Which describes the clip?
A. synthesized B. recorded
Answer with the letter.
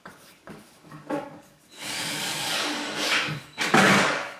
A